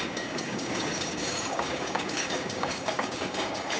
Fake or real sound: fake